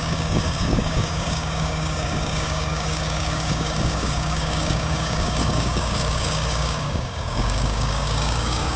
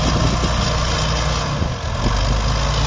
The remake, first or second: first